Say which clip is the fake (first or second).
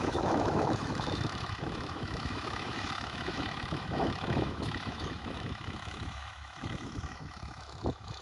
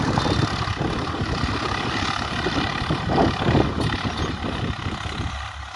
first